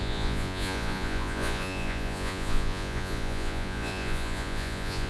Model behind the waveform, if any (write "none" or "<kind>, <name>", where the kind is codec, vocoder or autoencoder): vocoder, Vocos